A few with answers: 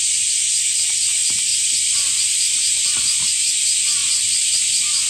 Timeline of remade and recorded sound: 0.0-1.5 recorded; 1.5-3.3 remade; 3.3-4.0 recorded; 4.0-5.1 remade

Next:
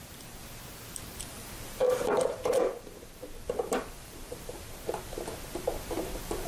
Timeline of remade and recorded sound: 0.0-0.4 remade; 0.4-1.2 recorded; 1.2-3.2 remade; 3.2-3.9 recorded; 3.9-6.5 remade

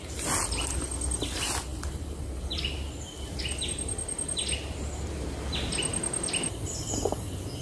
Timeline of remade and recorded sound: 0.0-7.6 recorded

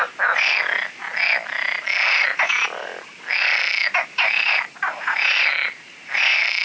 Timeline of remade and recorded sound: 0.0-5.5 recorded; 5.5-6.1 remade; 6.1-6.6 recorded